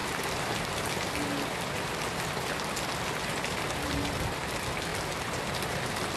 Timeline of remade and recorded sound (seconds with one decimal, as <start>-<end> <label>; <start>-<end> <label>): 0.0-6.2 recorded